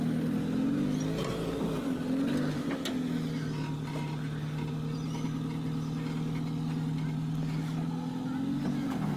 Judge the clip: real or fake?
real